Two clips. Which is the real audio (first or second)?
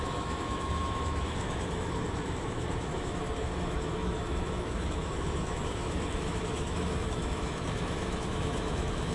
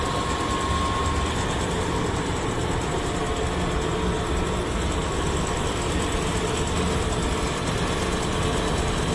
second